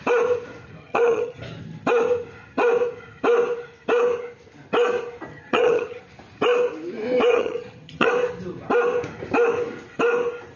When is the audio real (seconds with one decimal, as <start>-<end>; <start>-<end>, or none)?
0.0-0.8; 1.4-5.3; 6.0-7.3; 8.1-10.6